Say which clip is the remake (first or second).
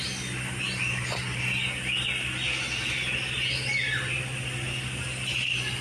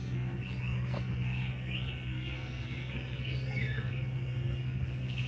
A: second